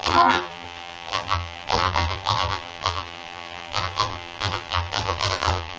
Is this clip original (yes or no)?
no